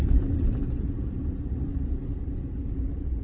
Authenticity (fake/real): fake